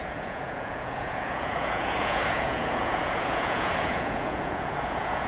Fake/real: fake